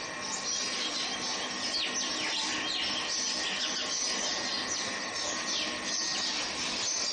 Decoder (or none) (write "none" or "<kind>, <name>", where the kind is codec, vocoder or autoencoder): none